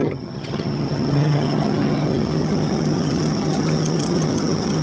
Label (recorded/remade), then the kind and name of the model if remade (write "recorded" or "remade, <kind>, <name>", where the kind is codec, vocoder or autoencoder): remade, vocoder, HiFi-GAN